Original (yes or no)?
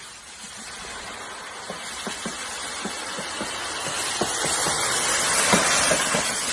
yes